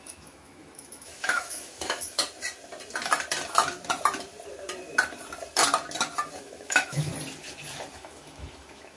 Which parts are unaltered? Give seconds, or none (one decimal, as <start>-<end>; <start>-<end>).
2.2-6.4; 7.1-8.0